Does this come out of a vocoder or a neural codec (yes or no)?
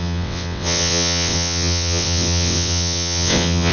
yes